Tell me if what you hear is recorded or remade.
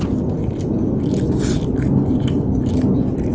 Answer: recorded